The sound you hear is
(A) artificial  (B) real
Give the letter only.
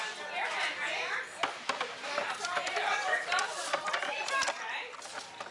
B